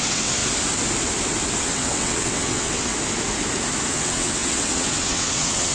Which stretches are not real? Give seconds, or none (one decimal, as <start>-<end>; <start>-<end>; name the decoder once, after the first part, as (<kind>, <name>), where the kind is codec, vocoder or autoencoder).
0.0-0.4 (vocoder, WaveNeXt); 1.6-2.9; 3.9-5.7